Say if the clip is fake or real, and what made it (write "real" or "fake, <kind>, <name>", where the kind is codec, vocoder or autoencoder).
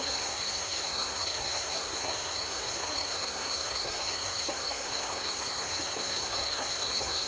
fake, codec, SNAC